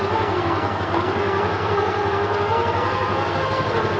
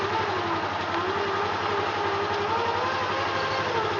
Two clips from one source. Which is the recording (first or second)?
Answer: second